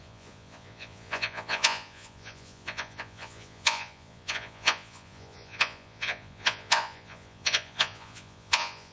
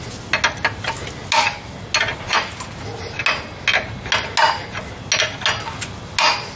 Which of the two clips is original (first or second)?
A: second